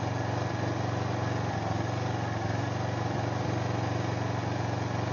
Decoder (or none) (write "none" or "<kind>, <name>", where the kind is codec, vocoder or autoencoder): none